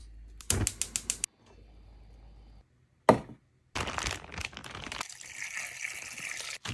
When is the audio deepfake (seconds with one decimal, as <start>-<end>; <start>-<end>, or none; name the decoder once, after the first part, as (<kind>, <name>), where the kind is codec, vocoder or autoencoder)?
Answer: none